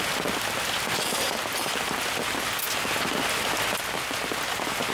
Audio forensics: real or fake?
real